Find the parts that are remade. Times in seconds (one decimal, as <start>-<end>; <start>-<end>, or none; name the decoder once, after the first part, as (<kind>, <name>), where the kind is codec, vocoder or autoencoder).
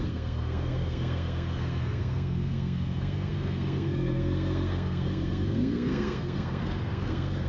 0.0-7.5 (codec, SNAC)